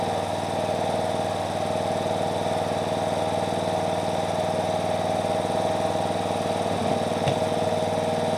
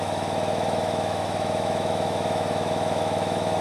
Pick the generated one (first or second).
second